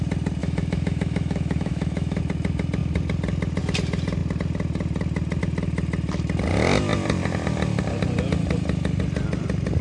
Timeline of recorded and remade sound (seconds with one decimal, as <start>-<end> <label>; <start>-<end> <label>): 0.0-0.4 recorded; 0.4-2.2 remade; 2.2-9.8 recorded